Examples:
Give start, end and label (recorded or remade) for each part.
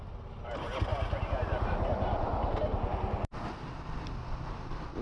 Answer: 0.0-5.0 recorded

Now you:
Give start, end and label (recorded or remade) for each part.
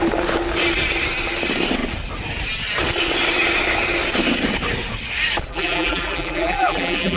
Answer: 0.0-5.5 recorded; 5.5-7.2 remade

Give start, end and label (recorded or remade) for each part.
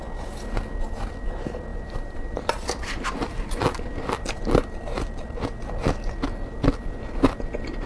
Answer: 0.0-1.7 recorded; 1.7-3.6 remade; 3.6-7.9 recorded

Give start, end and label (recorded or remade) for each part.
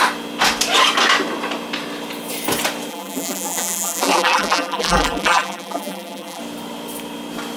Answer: 0.0-2.9 recorded; 2.9-6.4 remade; 6.4-7.6 recorded